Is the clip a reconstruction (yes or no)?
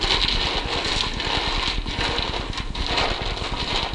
no